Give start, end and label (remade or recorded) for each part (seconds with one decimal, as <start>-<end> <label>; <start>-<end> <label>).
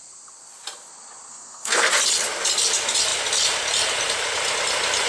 0.0-1.3 recorded; 1.3-1.9 remade; 1.9-5.1 recorded